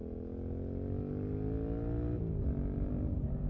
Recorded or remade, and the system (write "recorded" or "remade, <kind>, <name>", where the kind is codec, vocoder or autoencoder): recorded